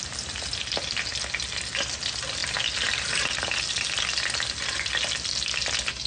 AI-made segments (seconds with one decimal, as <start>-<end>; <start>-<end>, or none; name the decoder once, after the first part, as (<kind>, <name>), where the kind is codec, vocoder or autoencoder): none